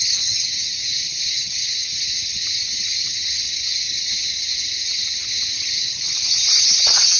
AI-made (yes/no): yes